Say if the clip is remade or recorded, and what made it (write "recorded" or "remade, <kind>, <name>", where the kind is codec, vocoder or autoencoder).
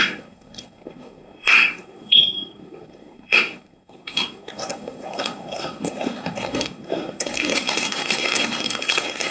remade, codec, SNAC